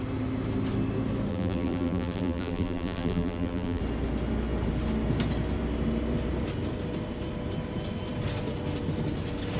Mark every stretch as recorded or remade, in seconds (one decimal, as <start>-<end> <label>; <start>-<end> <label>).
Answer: 0.0-1.3 recorded; 1.3-3.8 remade; 3.8-9.6 recorded